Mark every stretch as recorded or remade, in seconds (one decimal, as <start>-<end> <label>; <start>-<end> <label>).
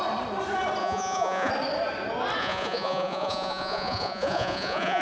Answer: 0.0-0.8 recorded; 0.8-1.5 remade; 1.5-2.4 recorded; 2.4-5.0 remade